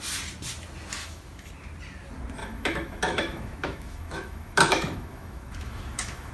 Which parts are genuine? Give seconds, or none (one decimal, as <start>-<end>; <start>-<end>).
0.0-1.0; 1.5-2.4